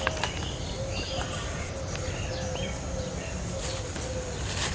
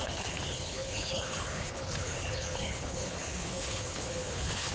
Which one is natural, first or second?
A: first